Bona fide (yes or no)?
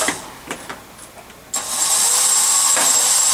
yes